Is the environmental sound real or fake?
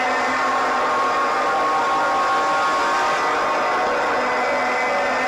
real